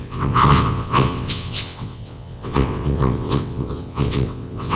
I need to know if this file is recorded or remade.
remade